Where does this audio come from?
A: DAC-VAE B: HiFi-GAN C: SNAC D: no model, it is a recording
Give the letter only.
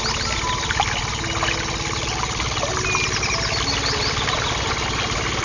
D